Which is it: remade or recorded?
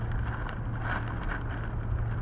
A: recorded